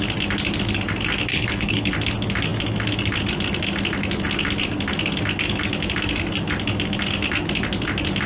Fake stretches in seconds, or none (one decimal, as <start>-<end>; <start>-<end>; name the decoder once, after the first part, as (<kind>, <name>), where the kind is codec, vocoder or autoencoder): 1.3-1.9 (codec, HILCodec)